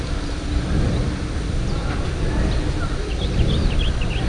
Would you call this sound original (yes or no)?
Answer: no